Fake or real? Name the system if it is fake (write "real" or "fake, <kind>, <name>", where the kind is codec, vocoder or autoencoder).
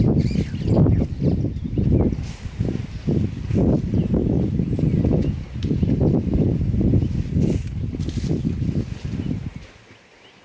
real